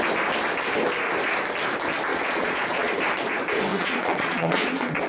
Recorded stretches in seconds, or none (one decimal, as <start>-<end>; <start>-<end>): 0.0-2.1; 2.9-3.7